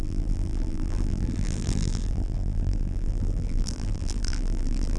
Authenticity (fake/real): fake